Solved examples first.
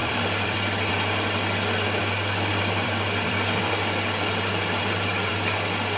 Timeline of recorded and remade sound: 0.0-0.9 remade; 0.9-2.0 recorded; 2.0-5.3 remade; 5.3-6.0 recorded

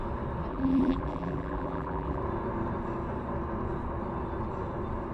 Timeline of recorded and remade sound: 0.0-0.5 recorded; 0.5-2.2 remade; 2.2-5.1 recorded